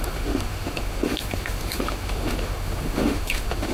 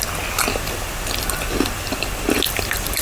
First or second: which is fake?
first